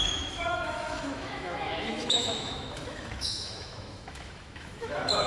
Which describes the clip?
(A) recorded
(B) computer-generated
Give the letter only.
B